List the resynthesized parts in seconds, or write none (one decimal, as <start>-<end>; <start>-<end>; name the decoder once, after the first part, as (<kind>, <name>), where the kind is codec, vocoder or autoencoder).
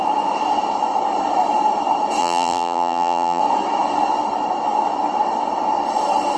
2.2-3.4 (vocoder, BigVGAN v2)